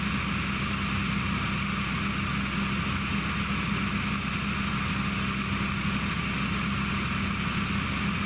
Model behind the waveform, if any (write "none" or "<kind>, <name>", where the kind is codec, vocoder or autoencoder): none